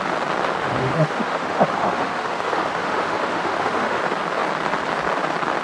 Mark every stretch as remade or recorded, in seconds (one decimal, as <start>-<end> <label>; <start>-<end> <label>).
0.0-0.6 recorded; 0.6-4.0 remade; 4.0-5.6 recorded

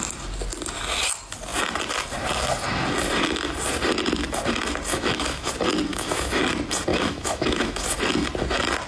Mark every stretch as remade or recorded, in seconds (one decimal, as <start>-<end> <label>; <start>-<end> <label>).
0.0-4.9 recorded; 4.9-5.5 remade; 5.5-5.9 recorded; 5.9-6.4 remade; 6.4-6.9 recorded; 6.9-7.8 remade; 7.8-8.9 recorded

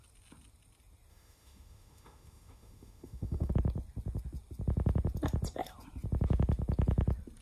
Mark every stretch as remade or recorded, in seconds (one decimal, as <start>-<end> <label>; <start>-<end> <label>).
0.0-1.1 recorded; 1.1-3.5 remade; 3.5-7.4 recorded

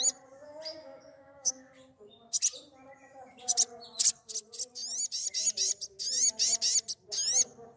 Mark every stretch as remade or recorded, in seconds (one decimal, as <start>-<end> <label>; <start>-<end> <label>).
0.0-0.8 recorded; 0.8-1.5 remade; 1.5-7.8 recorded

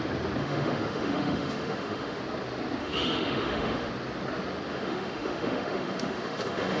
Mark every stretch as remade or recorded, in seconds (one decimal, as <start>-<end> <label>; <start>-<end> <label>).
0.0-0.4 recorded; 0.4-2.2 remade; 2.2-2.8 recorded; 2.8-3.9 remade; 3.9-4.7 recorded; 4.7-6.8 remade